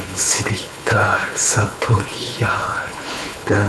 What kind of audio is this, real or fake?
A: fake